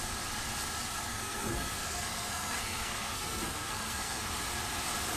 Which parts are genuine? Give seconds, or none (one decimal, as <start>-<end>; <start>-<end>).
0.0-1.1; 4.2-5.2